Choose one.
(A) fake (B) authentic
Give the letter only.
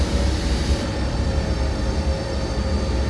B